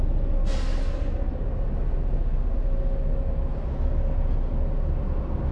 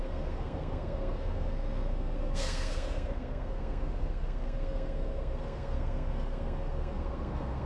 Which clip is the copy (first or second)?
second